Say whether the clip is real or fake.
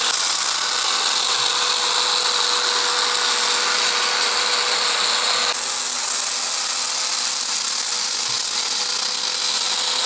real